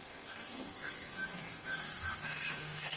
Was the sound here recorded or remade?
remade